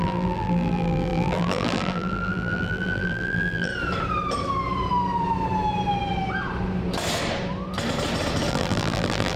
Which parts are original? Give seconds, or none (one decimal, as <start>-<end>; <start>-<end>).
3.7-8.5